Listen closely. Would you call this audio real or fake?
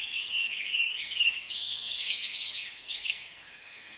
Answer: fake